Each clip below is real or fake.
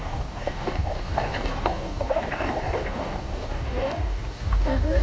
fake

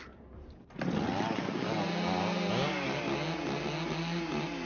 real